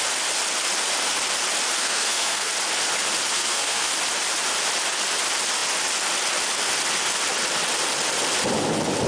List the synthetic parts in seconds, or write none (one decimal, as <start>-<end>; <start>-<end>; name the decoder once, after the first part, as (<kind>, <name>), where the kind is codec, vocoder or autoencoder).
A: 1.8-2.5 (codec, SNAC); 3.3-3.9